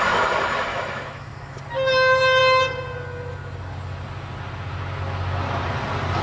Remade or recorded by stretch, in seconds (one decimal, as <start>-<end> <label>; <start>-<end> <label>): 0.0-0.7 recorded; 0.7-1.6 remade; 1.6-6.2 recorded